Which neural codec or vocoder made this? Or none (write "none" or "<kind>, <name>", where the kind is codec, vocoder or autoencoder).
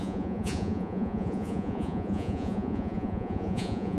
vocoder, Vocos